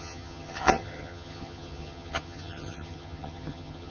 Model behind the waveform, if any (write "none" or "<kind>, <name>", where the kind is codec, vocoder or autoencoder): vocoder, HiFi-GAN